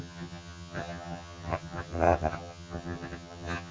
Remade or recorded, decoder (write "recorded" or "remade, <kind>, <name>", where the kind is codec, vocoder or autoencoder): remade, vocoder, HiFi-GAN